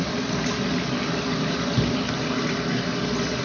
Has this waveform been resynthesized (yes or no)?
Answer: no